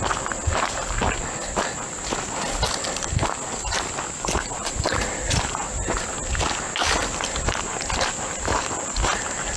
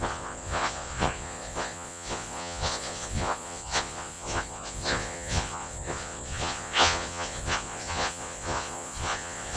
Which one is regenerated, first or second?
second